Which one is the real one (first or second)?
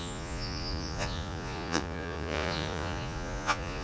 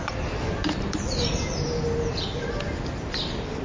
second